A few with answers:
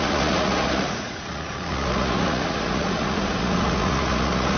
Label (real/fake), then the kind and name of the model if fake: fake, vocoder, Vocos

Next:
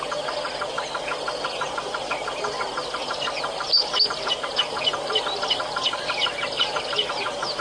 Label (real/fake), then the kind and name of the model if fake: real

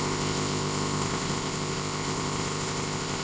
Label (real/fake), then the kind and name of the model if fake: fake, codec, ZipCodec